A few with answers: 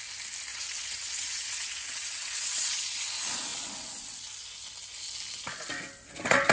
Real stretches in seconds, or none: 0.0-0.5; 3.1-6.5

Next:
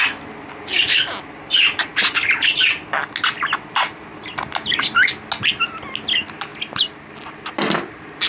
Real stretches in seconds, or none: 0.0-8.3

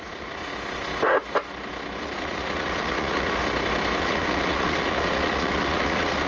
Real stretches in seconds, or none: 0.5-2.0; 3.4-4.0

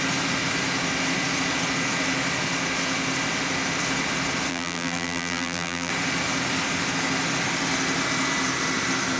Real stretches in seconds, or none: 0.0-4.5; 5.9-9.2

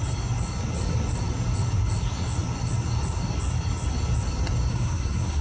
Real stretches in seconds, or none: 0.0-4.7